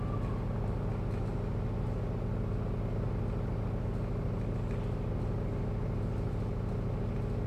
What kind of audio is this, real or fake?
real